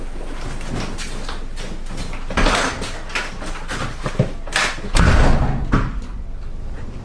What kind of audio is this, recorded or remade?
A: recorded